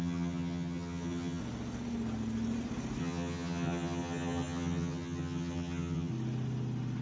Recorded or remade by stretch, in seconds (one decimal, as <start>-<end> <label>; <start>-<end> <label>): 0.0-1.4 remade; 1.4-3.0 recorded; 3.0-6.1 remade; 6.1-7.0 recorded